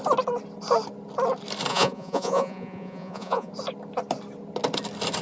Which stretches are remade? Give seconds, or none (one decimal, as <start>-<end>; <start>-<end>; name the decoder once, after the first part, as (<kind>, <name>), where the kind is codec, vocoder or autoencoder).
1.7-3.5 (vocoder, Vocos)